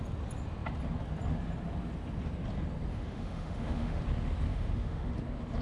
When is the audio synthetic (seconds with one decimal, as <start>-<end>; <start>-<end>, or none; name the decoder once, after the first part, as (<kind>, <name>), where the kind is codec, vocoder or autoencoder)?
2.9-4.0 (autoencoder, DAC-VAE); 4.5-5.1